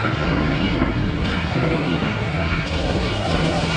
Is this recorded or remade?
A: remade